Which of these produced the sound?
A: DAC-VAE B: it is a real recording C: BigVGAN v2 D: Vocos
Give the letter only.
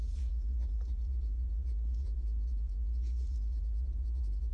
D